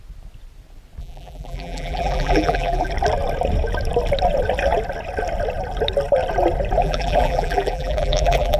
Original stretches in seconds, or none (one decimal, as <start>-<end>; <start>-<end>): 0.0-1.0; 2.9-6.8